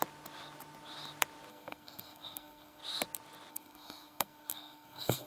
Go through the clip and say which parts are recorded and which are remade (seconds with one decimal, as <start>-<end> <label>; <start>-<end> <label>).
0.0-1.5 recorded; 1.5-2.8 remade; 2.8-3.5 recorded; 3.5-5.3 remade